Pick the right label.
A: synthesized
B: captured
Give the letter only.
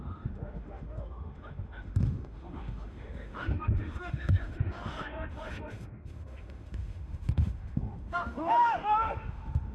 A